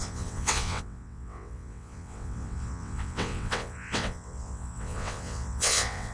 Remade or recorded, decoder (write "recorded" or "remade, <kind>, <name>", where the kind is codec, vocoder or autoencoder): remade, vocoder, WaveNeXt